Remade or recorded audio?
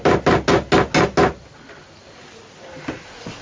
recorded